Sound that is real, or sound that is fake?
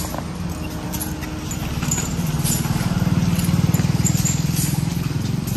real